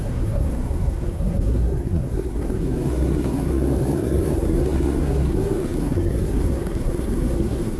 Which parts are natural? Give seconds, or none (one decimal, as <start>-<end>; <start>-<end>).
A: none